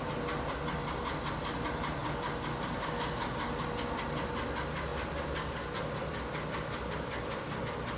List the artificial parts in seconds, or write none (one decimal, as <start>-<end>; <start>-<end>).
4.9-7.6